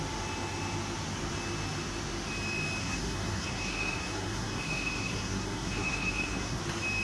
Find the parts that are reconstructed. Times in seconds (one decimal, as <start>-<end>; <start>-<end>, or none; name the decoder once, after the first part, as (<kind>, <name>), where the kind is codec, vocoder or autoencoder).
2.8-6.6 (codec, SNAC)